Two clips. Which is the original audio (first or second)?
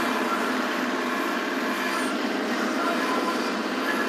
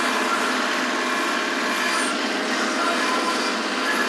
second